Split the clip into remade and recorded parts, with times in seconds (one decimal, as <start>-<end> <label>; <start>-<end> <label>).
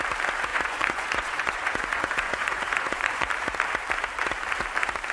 0.0-0.5 recorded; 0.5-3.3 remade; 3.3-5.1 recorded